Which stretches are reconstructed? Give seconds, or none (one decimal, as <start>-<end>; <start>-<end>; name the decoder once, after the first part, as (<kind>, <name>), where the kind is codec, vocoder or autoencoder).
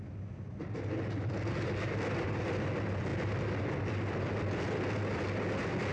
none